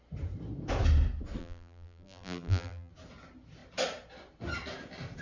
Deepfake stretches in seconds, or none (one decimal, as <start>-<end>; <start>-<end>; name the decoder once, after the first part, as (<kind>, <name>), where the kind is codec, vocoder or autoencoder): 1.4-2.9 (vocoder, BigVGAN v2)